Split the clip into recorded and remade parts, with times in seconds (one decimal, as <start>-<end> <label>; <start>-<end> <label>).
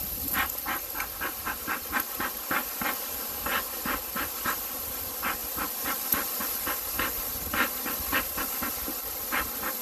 0.0-9.8 recorded